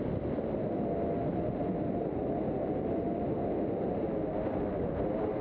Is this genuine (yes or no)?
yes